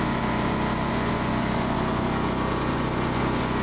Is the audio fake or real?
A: fake